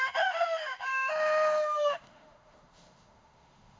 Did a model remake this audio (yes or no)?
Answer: yes